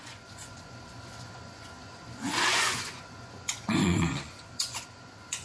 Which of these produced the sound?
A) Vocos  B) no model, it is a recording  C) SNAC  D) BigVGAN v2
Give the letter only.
A